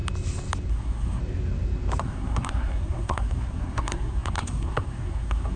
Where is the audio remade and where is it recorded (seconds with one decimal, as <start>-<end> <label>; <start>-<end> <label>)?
0.0-0.7 recorded; 0.7-1.2 remade; 1.2-2.0 recorded; 2.0-5.6 remade